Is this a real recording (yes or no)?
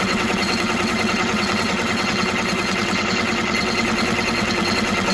no